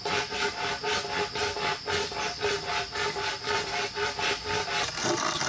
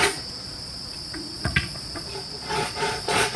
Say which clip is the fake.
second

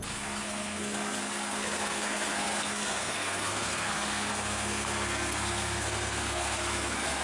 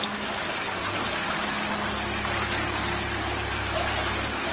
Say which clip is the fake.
first